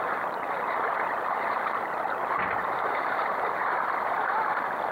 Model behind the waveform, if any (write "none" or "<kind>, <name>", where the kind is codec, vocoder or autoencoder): vocoder, BigVGAN v2